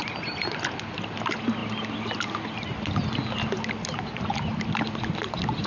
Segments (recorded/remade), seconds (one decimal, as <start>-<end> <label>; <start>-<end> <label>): 0.0-5.7 recorded